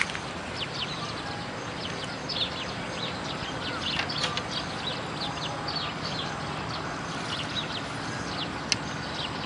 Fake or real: real